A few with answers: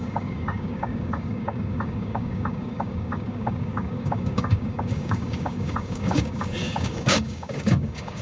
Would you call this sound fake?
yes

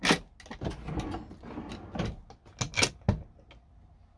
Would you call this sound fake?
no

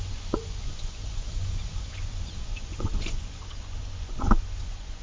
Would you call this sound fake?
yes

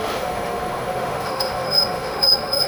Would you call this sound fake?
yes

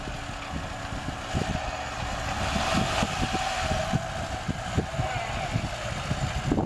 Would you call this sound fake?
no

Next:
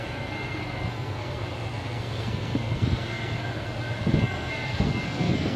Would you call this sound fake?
yes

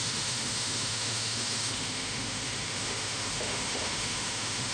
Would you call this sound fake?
yes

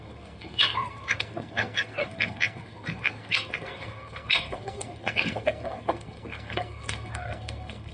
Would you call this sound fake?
yes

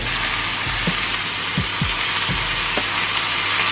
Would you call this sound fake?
no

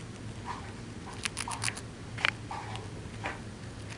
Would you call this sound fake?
no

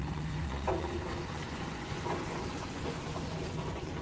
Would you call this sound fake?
yes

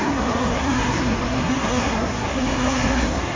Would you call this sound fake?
yes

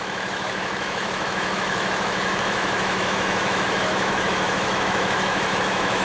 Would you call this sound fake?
yes